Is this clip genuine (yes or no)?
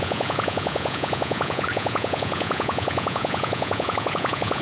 no